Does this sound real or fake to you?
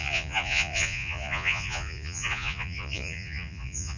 fake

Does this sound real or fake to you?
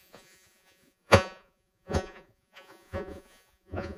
fake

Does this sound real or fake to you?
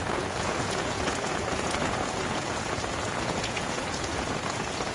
fake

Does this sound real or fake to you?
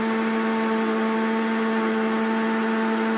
real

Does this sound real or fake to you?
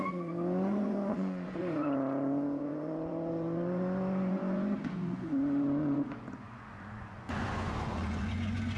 fake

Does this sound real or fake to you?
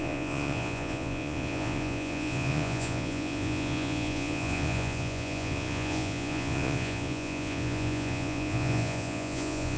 fake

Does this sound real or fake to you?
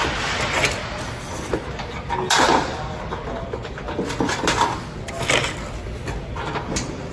real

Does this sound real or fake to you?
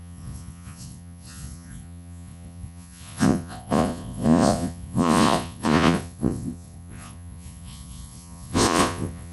fake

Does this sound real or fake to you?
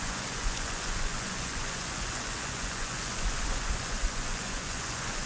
fake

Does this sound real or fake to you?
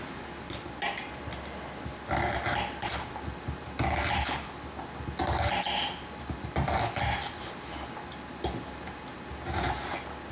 real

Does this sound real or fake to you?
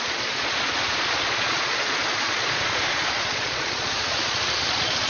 fake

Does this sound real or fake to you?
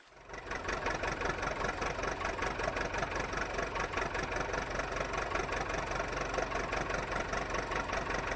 real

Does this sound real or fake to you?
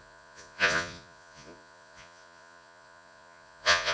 fake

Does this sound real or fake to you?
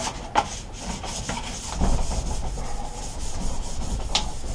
real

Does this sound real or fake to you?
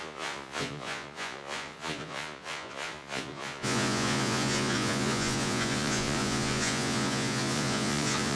fake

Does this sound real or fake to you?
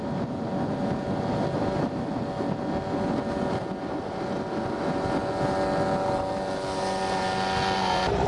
real